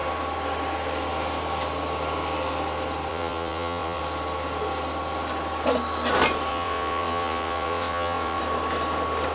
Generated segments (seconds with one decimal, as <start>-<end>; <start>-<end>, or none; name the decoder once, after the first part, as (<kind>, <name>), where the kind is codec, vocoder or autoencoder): 3.1-4.0 (vocoder, WaveNeXt); 6.5-8.4